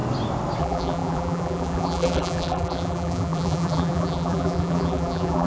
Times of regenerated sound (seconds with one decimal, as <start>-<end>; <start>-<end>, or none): 0.6-5.5